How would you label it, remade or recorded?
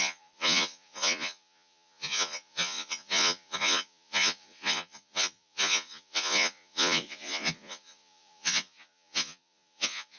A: remade